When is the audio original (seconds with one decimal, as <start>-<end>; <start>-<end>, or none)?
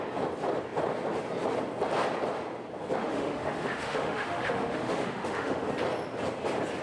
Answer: 0.0-3.0; 5.7-6.8